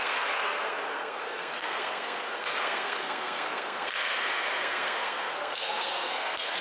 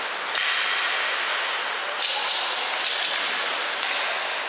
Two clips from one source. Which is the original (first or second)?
second